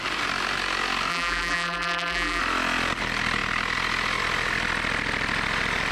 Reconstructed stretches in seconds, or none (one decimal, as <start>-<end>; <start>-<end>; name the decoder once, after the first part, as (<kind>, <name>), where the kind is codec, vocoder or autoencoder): 1.1-2.4 (vocoder, BigVGAN v2)